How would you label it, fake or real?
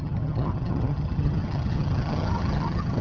fake